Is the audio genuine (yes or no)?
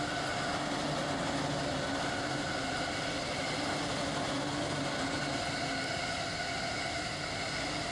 yes